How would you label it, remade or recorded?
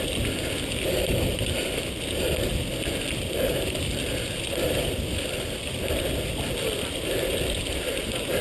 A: recorded